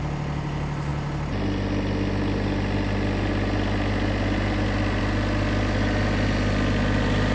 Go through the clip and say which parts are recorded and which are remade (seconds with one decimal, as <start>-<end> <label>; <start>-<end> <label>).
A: 0.0-7.3 recorded